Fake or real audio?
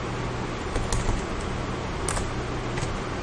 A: real